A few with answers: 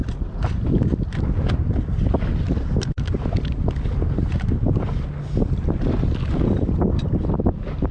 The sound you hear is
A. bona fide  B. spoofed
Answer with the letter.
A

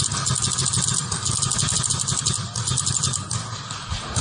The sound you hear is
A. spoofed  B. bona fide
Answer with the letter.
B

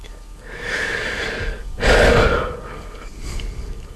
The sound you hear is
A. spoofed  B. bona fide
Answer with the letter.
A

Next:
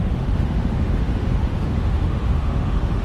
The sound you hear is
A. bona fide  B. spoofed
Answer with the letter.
B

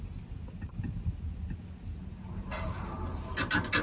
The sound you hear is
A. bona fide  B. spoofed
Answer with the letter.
A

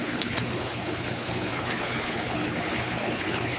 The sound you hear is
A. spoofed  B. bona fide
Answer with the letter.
A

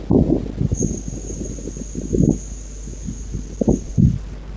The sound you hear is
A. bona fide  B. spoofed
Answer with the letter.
A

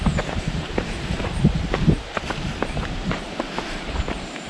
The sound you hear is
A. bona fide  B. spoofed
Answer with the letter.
B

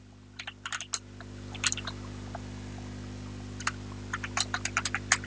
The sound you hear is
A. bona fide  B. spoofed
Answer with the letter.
A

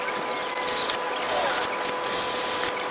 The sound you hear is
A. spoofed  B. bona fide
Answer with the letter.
B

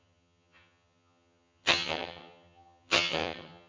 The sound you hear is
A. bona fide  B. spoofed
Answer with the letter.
B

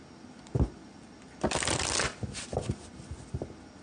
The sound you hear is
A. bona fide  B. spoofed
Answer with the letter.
A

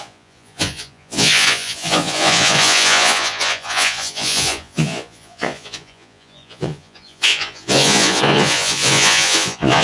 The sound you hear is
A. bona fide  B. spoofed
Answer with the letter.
B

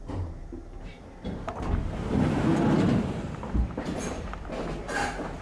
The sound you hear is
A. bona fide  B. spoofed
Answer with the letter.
B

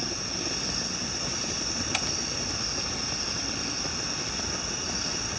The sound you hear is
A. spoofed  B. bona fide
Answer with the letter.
A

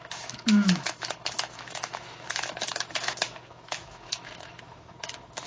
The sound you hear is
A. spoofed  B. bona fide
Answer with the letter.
A